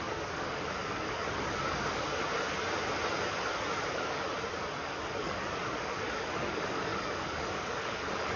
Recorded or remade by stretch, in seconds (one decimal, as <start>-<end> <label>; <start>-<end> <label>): 0.0-2.3 remade; 2.3-3.9 recorded; 3.9-4.3 remade; 4.3-4.8 recorded; 4.8-8.4 remade